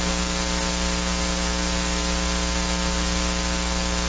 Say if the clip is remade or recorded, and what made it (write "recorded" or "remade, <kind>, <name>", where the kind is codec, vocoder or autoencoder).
recorded